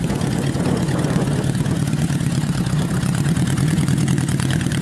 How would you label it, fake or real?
fake